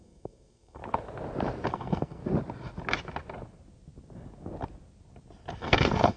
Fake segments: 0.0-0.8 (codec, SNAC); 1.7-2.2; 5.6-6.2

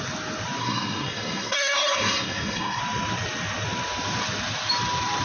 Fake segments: 0.6-2.8 (codec, SNAC)